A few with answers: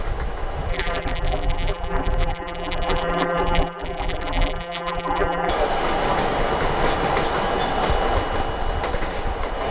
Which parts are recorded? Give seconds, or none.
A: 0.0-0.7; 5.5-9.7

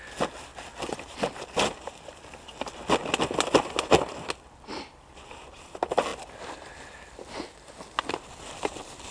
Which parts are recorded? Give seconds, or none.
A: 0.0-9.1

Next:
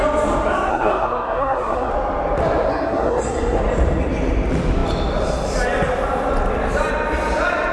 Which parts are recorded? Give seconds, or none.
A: 0.0-0.7; 1.9-2.7; 3.6-7.7

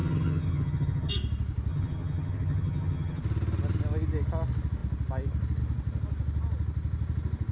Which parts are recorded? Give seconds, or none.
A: 1.1-1.7; 3.2-7.5